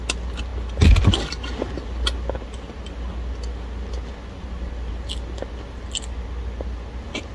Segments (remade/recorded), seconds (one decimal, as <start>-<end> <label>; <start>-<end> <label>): 0.0-7.3 recorded